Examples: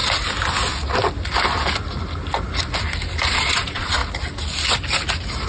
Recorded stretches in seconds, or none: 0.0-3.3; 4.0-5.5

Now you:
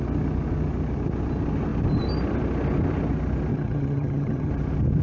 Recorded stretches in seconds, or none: 0.0-3.5; 4.5-5.0

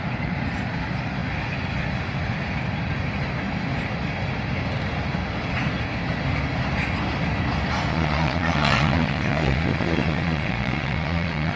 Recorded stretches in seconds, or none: 0.0-7.9

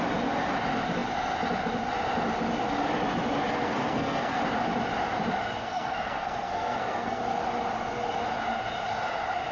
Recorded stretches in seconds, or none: 0.0-3.5; 4.4-5.6; 7.2-9.5

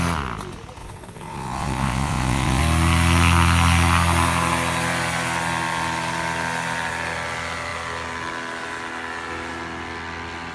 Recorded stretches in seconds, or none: 0.0-0.8; 2.6-10.5